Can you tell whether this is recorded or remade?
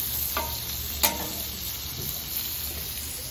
recorded